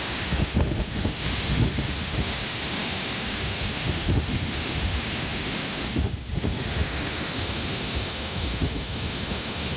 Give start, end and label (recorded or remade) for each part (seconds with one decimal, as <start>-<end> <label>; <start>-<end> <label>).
0.0-9.8 remade